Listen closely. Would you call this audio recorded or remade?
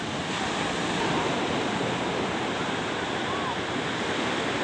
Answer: recorded